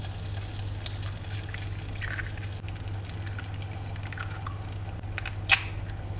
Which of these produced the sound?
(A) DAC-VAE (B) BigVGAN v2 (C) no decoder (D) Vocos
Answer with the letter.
C